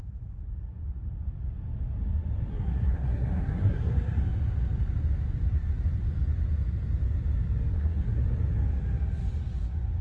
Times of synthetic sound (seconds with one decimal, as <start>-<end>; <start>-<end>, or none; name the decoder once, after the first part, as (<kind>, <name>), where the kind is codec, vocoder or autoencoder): 2.5-4.2 (codec, SNAC); 7.7-8.2